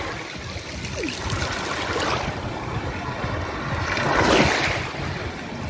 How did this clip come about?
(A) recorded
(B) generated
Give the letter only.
A